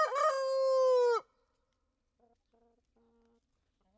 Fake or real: real